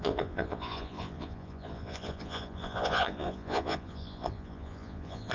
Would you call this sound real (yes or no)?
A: no